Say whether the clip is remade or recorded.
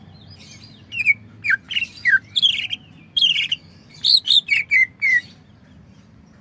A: remade